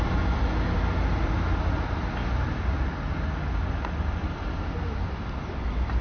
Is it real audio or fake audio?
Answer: real